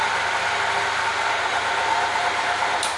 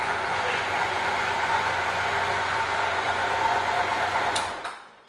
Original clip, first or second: first